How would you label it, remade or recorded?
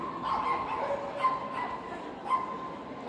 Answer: recorded